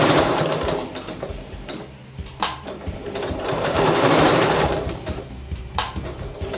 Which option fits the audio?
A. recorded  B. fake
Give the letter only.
B